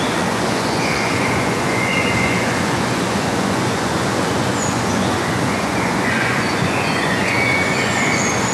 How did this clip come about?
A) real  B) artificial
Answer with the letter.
B